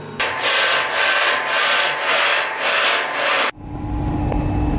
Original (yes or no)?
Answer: yes